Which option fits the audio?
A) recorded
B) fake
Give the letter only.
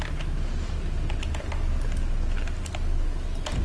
A